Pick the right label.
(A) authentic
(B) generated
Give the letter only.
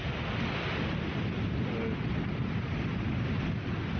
A